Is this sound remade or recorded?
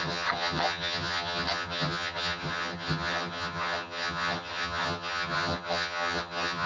remade